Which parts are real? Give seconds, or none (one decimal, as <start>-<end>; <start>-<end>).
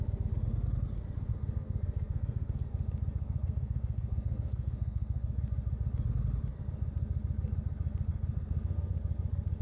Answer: 0.0-1.3; 2.6-3.2; 5.4-8.1; 8.9-9.6